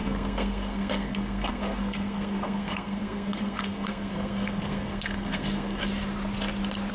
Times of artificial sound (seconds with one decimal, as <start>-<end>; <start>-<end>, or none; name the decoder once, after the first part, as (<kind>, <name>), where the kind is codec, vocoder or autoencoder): 0.0-5.8 (codec, SNAC)